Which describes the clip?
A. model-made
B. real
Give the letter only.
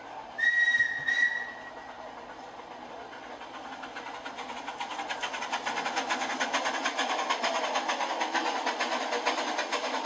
B